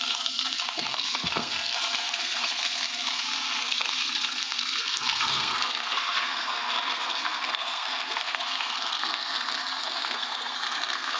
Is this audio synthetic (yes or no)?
yes